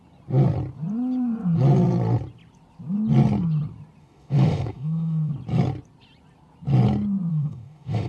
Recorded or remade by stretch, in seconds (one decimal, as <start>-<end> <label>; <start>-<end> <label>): 0.0-4.0 recorded; 4.0-5.3 remade; 5.3-7.3 recorded; 7.3-8.1 remade